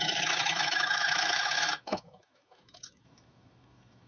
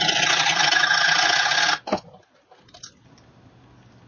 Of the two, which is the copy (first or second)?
first